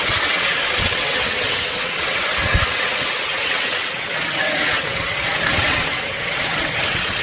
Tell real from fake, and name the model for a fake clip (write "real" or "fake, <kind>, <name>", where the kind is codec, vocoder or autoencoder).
fake, vocoder, WaveNeXt